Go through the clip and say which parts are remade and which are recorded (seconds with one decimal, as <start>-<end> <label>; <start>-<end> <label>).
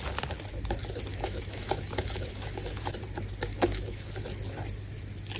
0.0-1.1 recorded; 1.1-2.8 remade; 2.8-3.5 recorded; 3.5-4.1 remade; 4.1-5.4 recorded